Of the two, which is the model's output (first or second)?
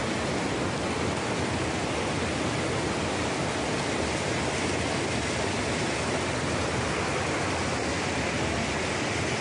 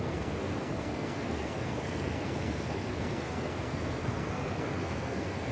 second